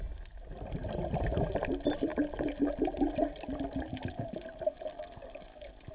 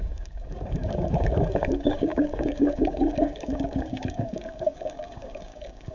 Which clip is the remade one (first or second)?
second